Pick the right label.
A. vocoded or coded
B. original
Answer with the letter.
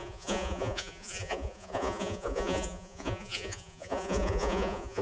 A